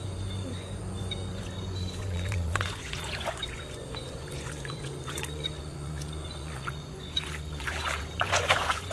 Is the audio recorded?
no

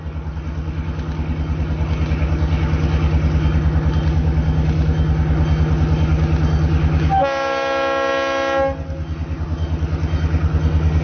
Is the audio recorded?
yes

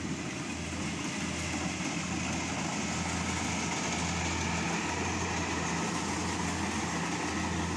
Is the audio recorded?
yes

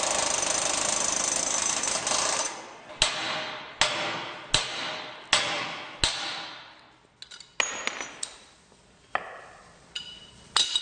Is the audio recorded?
yes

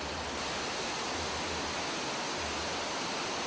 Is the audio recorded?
yes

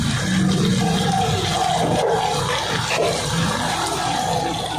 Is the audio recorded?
yes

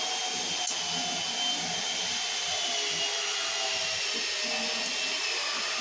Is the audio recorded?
yes